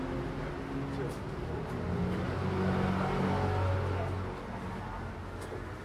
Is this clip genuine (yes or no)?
yes